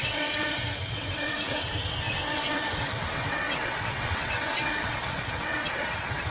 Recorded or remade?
remade